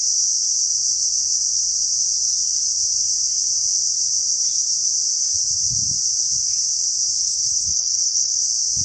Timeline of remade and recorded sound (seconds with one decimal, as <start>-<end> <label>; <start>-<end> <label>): 0.0-7.1 recorded; 7.1-8.4 remade; 8.4-8.8 recorded